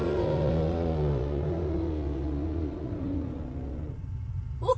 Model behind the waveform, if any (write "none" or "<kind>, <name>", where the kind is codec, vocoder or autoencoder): vocoder, Vocos